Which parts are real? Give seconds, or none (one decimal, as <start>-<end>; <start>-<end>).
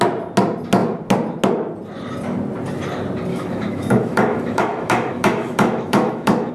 0.0-3.3